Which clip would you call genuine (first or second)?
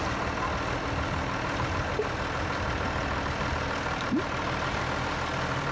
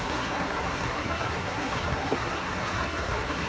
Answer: first